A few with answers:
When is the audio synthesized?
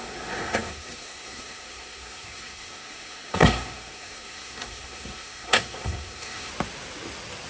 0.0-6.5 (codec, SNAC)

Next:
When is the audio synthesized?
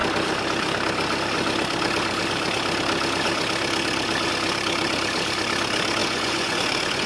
6.0-7.1 (vocoder, Vocos)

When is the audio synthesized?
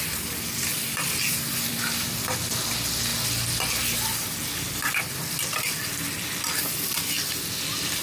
none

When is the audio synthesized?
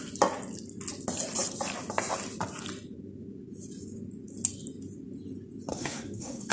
5.7-6.5 (codec, SNAC)